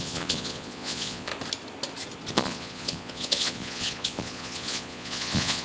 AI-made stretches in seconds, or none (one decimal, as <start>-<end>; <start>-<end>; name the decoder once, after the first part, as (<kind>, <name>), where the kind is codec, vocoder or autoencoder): 0.0-1.3 (vocoder, Vocos); 2.3-5.6